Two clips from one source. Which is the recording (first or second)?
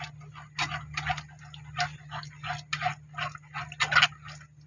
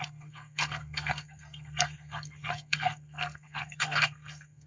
first